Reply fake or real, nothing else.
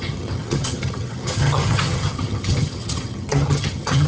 fake